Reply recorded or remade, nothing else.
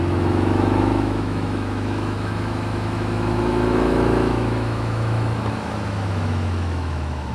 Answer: remade